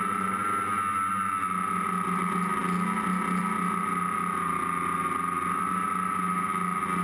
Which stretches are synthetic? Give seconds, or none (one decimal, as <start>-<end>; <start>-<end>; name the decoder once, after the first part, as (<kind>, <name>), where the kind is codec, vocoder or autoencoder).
none